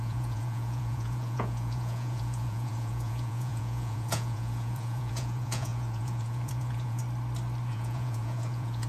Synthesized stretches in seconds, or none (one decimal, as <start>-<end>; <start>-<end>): 0.0-7.0; 7.7-8.9